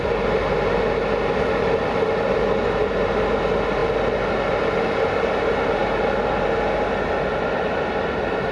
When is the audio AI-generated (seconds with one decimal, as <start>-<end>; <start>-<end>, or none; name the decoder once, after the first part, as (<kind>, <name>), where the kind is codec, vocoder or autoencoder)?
none